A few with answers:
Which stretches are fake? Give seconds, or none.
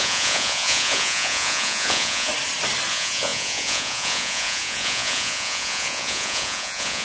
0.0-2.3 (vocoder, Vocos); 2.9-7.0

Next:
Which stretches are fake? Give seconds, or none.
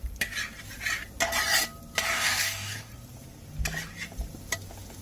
2.1-2.9 (codec, DAC)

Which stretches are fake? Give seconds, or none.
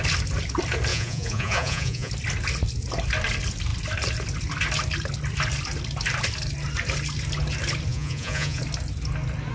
0.9-2.1 (vocoder, Vocos); 7.9-8.6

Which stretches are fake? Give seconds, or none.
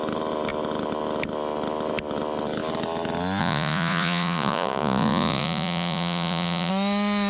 3.4-6.7 (vocoder, Vocos)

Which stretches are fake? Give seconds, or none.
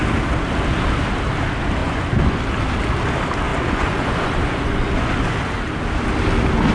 1.8-2.4 (vocoder, Vocos); 3.5-5.1